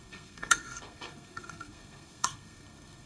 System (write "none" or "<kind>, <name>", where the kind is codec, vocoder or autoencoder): codec, SNAC